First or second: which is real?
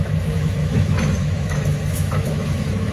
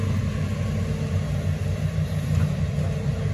second